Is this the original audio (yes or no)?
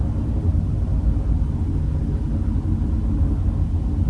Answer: yes